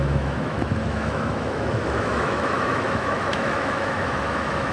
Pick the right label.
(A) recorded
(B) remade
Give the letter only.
B